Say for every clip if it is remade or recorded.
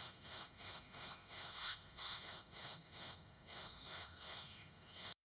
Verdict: remade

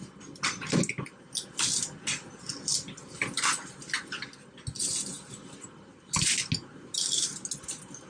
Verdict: recorded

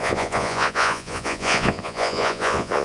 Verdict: remade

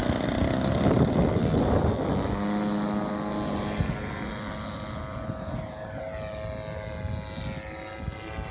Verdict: recorded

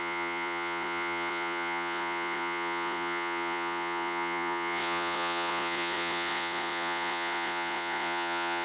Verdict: remade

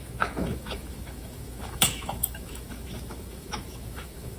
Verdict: remade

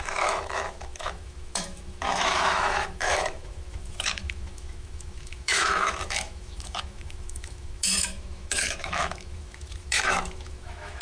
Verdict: remade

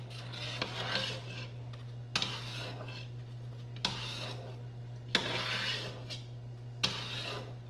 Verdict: recorded